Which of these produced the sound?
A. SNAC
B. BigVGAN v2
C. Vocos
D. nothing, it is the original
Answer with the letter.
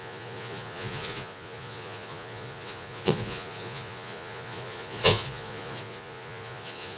C